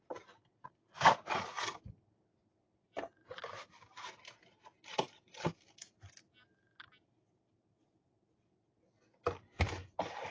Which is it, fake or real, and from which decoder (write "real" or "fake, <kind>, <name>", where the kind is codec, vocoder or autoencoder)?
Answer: real